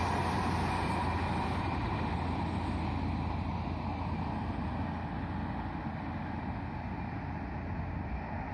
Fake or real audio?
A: real